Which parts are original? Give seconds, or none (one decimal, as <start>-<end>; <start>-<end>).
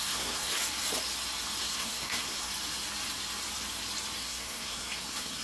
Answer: 0.6-1.6; 2.5-4.2